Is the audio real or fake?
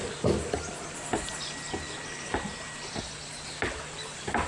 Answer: real